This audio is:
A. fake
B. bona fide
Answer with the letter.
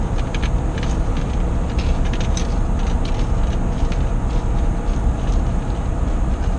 B